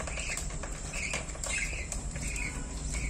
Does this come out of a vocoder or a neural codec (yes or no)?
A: yes